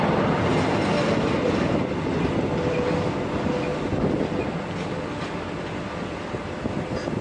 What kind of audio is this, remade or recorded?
recorded